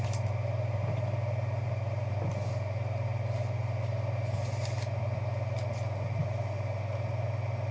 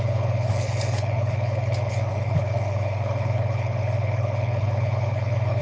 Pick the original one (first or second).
first